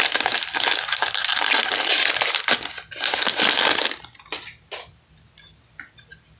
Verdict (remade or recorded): recorded